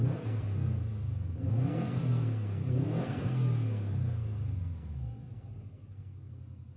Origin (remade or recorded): remade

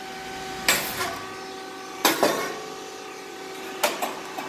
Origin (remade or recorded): recorded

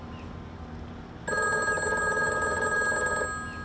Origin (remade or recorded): recorded